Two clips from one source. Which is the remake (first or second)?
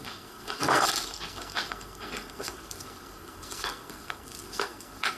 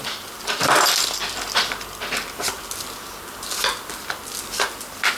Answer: first